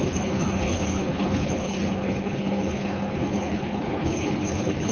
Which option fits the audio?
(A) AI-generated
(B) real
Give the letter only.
A